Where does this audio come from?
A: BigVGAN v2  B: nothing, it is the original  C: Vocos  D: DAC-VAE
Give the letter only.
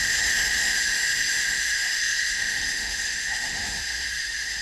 D